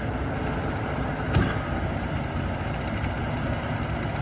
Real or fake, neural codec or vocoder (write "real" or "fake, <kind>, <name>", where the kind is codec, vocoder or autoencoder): real